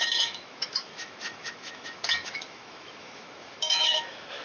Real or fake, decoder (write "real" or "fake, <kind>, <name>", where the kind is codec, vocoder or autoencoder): fake, autoencoder, DAC-VAE